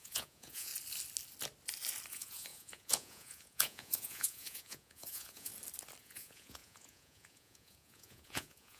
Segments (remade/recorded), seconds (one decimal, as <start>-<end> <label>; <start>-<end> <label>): 0.0-0.7 remade; 0.7-2.1 recorded; 2.1-5.5 remade; 5.5-6.0 recorded; 6.0-8.8 remade

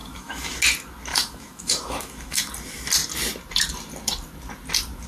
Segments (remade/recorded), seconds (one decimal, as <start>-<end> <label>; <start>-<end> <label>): 0.0-0.6 remade; 0.6-1.1 recorded; 1.1-2.5 remade; 2.5-5.1 recorded

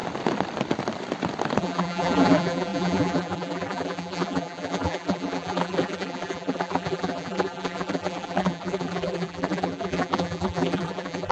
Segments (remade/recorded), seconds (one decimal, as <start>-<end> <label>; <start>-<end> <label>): 0.0-1.6 recorded; 1.6-11.3 remade

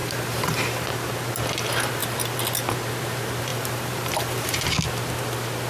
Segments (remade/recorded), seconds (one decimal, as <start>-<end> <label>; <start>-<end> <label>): 0.0-0.9 remade; 0.9-3.5 recorded; 3.5-4.6 remade; 4.6-5.7 recorded

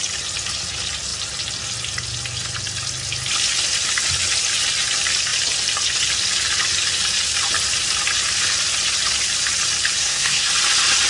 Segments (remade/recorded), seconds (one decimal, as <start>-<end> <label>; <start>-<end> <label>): 0.0-10.0 recorded; 10.0-10.5 remade; 10.5-11.1 recorded

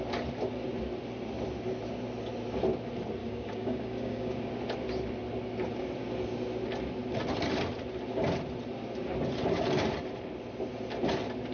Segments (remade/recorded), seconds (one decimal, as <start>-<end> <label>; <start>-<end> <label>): 0.0-3.2 recorded; 3.2-4.5 remade; 4.5-11.5 recorded